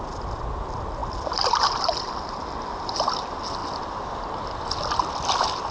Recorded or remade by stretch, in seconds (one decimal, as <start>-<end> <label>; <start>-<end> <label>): 0.0-5.7 recorded

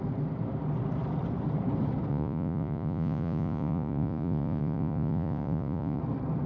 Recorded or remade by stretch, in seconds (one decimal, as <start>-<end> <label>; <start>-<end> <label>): 0.0-2.1 recorded; 2.1-6.0 remade; 6.0-6.5 recorded

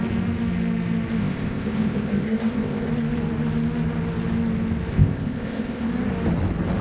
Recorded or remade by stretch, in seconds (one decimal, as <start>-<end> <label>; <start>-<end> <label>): 0.0-1.2 recorded; 1.2-2.9 remade; 2.9-4.9 recorded; 4.9-5.9 remade; 5.9-6.8 recorded

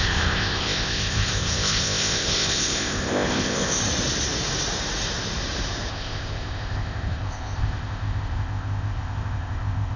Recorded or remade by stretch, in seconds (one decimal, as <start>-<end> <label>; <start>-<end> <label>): 0.0-3.8 remade; 3.8-5.9 recorded; 5.9-10.0 remade

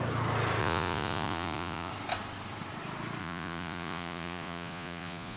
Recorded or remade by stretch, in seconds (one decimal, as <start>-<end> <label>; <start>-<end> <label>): 0.0-0.6 recorded; 0.6-1.9 remade; 1.9-3.2 recorded; 3.2-5.4 remade

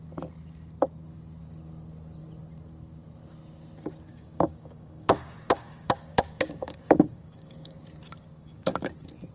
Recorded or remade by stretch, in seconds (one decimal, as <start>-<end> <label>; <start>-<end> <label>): 0.0-4.1 recorded; 4.1-7.8 remade; 7.8-8.3 recorded; 8.3-8.9 remade; 8.9-9.3 recorded

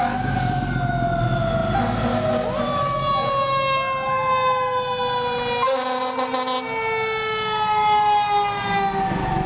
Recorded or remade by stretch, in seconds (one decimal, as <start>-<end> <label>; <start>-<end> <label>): 0.0-9.5 recorded

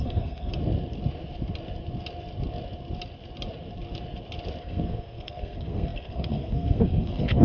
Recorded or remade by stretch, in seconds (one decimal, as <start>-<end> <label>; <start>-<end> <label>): 0.0-0.6 remade; 0.6-4.6 recorded; 4.6-7.4 remade